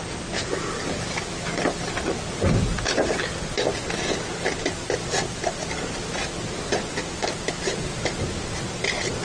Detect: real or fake real